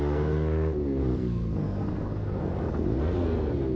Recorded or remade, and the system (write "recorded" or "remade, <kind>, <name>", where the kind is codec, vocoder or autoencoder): remade, codec, SNAC